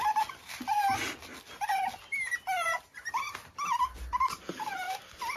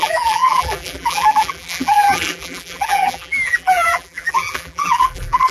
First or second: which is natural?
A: first